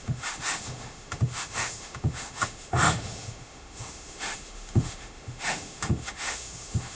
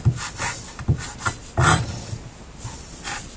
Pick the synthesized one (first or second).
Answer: first